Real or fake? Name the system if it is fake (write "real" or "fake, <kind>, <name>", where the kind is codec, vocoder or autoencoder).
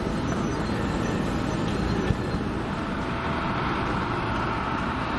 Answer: real